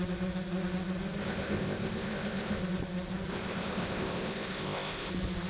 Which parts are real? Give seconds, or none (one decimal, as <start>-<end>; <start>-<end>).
0.0-1.2; 2.6-3.3; 5.1-5.5